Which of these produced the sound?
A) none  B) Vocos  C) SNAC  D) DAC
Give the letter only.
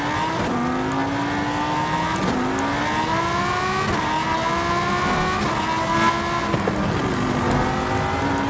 A